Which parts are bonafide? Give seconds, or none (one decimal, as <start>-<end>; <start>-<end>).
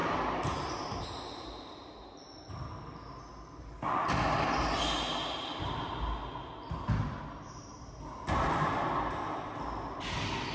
0.0-10.5